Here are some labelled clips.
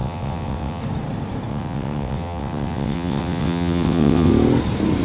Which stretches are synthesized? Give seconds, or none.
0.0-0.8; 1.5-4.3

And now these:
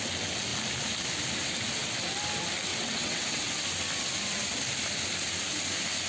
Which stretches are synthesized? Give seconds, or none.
2.7-3.5

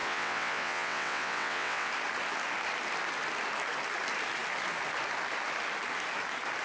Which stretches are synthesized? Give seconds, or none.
0.0-1.9

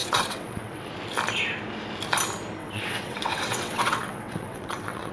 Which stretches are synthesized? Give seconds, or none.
0.0-0.9; 2.6-5.1

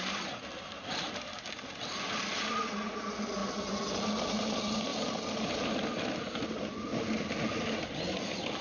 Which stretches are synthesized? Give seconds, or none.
none